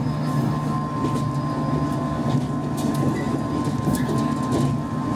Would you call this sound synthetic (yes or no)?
no